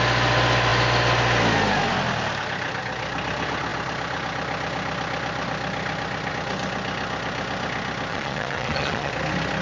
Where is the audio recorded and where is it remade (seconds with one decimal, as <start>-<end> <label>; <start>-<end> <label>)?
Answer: 0.0-8.1 recorded; 8.1-9.1 remade; 9.1-9.6 recorded